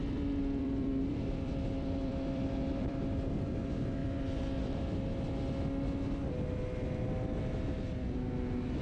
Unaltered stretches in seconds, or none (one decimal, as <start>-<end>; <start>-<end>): 3.0-4.0; 4.8-8.8